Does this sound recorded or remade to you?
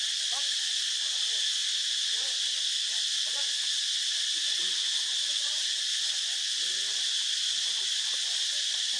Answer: recorded